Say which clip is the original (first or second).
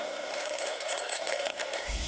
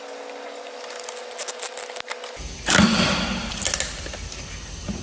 second